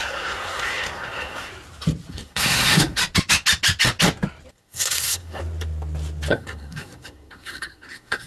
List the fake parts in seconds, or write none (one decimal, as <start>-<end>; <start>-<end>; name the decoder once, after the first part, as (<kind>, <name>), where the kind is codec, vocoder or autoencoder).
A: 0.0-1.5 (codec, SNAC); 2.1-3.0; 4.5-5.4; 6.3-8.3